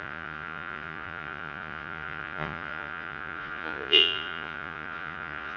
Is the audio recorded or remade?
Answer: remade